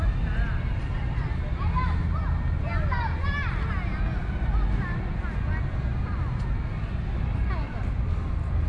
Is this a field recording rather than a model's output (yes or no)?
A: yes